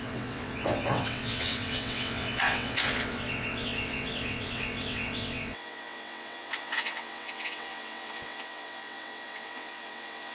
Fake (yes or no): yes